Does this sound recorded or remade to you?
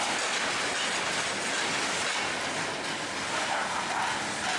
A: recorded